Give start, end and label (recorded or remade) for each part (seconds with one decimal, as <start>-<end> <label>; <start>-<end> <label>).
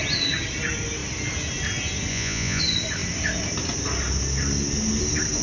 0.0-2.1 recorded; 2.1-2.6 remade; 2.6-5.4 recorded